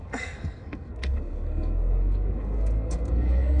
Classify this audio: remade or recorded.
remade